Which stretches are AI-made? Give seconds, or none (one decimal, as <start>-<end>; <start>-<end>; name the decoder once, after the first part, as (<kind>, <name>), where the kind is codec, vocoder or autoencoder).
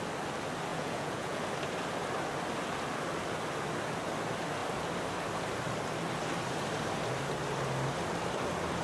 0.7-1.4 (vocoder, Vocos)